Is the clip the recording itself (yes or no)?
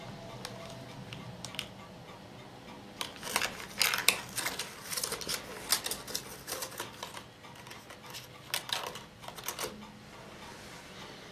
yes